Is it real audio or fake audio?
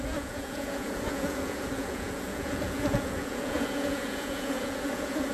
fake